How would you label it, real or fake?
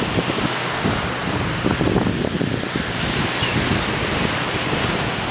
real